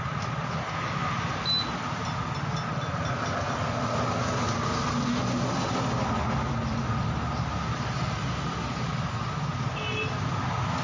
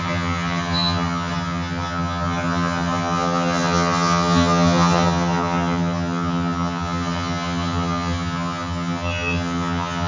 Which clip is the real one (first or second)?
first